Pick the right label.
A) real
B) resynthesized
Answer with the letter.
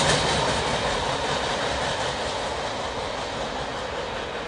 A